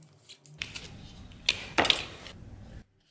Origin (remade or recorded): recorded